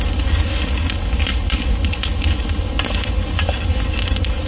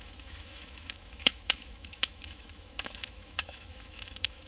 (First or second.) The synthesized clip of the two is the second